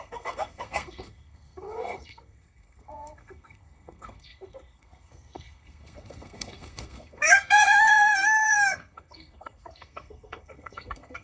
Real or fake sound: fake